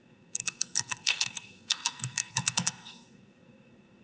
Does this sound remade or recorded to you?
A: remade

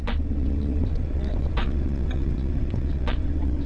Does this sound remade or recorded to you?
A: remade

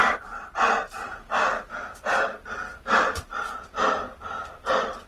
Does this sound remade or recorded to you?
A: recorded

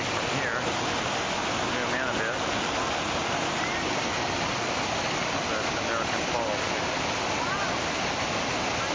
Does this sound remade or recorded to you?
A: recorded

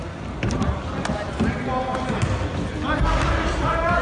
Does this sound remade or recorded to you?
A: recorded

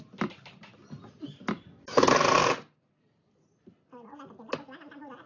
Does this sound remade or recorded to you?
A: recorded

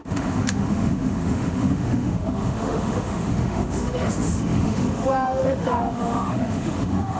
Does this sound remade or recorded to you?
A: remade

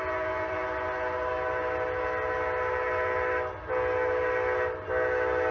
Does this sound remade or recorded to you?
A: recorded